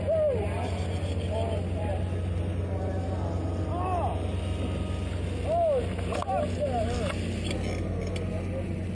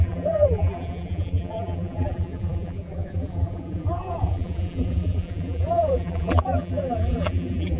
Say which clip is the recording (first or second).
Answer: first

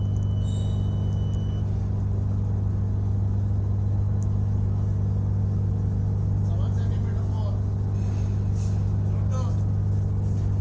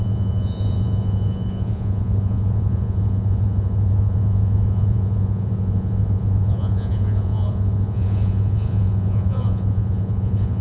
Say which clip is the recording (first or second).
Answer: first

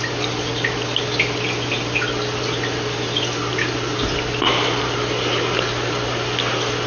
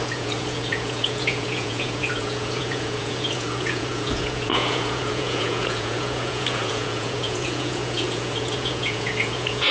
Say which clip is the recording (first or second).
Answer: first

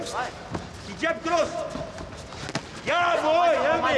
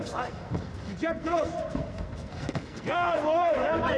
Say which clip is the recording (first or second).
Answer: first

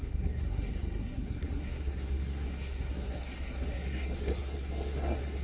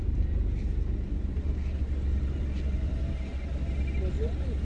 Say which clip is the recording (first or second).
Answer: second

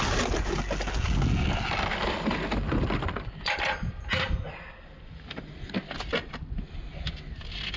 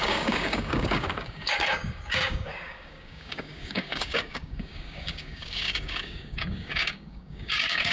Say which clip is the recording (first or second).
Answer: first